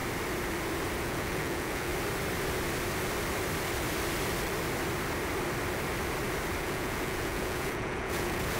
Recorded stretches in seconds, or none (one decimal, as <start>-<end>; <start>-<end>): 0.0-1.0; 1.9-6.6